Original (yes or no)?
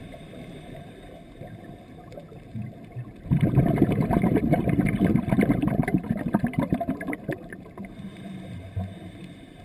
no